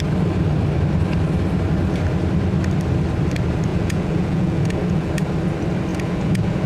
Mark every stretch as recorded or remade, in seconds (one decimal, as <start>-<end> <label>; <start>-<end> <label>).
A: 0.0-3.7 recorded; 3.7-5.1 remade; 5.1-5.9 recorded; 5.9-6.7 remade